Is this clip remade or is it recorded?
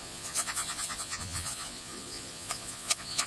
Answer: remade